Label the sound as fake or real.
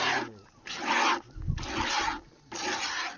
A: real